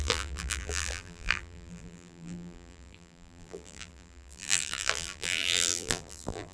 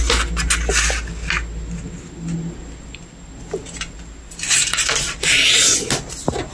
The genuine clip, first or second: second